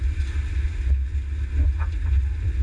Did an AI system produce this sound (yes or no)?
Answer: no